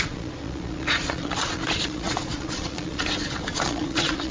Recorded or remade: remade